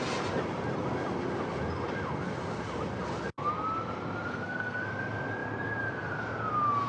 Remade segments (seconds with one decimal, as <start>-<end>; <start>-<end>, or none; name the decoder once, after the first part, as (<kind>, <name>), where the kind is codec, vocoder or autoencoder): 4.3-4.9 (codec, SNAC)

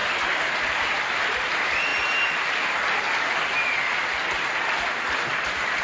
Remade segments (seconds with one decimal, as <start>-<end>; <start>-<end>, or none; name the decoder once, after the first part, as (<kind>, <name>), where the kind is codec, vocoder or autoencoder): 0.0-1.0 (vocoder, BigVGAN v2)

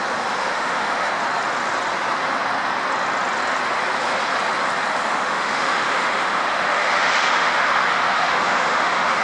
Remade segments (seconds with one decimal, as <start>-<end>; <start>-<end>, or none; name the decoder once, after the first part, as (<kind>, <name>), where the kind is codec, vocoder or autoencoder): 0.4-1.1 (autoencoder, DAC-VAE); 5.1-9.2

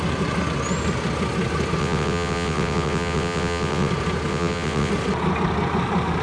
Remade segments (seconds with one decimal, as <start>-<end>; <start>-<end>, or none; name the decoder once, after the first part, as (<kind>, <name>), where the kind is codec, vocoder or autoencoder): 1.8-3.9 (vocoder, WaveNeXt); 4.3-4.9

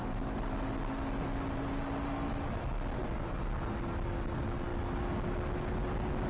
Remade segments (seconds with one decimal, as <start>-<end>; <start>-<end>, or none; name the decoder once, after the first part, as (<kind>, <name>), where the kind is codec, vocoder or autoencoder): none

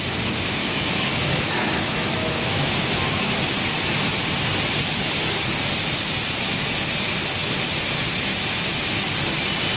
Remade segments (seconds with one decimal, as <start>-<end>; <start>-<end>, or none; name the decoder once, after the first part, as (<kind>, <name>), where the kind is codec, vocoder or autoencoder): 0.6-3.3 (autoencoder, DAC-VAE)